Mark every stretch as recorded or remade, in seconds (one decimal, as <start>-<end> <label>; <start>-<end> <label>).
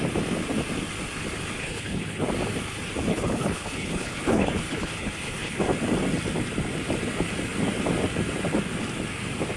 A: 0.0-1.6 recorded; 1.6-2.2 remade; 2.2-3.1 recorded; 3.1-5.6 remade; 5.6-9.6 recorded